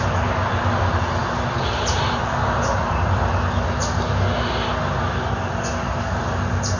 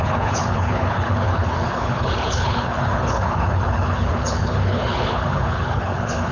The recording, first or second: first